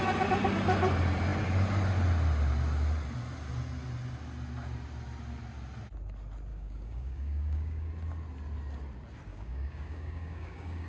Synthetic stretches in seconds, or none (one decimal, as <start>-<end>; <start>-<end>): 6.5-7.9; 9.3-10.9